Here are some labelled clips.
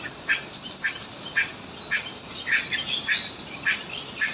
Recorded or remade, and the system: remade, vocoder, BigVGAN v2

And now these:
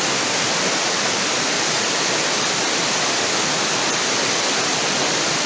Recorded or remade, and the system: recorded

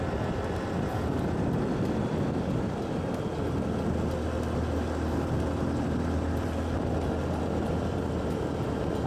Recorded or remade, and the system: recorded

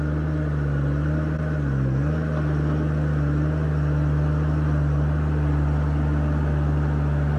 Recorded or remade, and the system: recorded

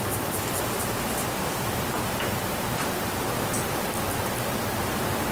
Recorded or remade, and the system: remade, vocoder, BigVGAN v2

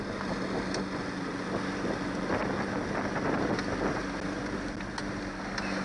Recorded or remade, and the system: recorded